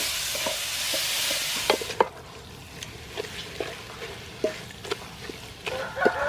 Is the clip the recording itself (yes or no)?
yes